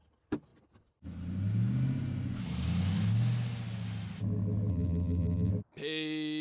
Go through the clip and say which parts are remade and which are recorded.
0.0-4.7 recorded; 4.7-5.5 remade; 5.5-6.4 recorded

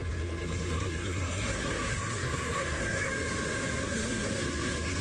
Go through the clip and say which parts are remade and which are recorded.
0.0-3.1 remade; 3.1-3.8 recorded; 3.8-5.0 remade

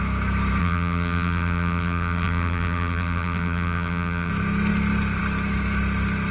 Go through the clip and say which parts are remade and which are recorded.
0.0-0.6 recorded; 0.6-4.3 remade; 4.3-6.3 recorded

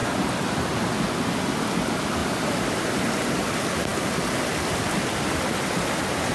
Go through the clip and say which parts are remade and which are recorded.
0.0-2.2 recorded; 2.2-2.8 remade; 2.8-6.3 recorded

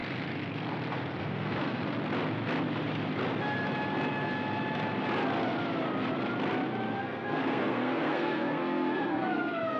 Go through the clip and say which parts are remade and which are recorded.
0.0-1.2 recorded; 1.2-1.8 remade; 1.8-7.0 recorded; 7.0-9.8 remade

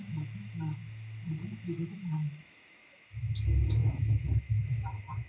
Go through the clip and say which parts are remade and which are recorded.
0.0-0.8 remade; 0.8-1.6 recorded; 1.6-5.3 remade

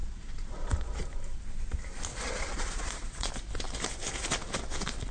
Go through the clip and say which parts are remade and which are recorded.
0.0-1.0 remade; 1.0-2.1 recorded; 2.1-3.3 remade; 3.3-5.1 recorded